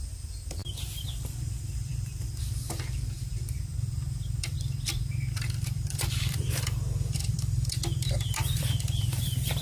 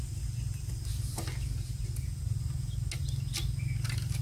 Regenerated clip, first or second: first